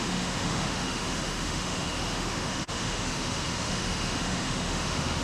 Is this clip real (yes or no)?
no